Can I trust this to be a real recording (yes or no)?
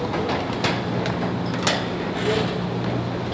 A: yes